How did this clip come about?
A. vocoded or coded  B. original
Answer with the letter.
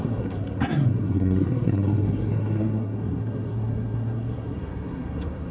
A